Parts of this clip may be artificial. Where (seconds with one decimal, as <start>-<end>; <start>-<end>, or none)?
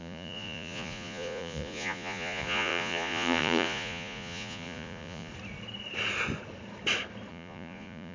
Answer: 0.0-5.3; 7.3-8.1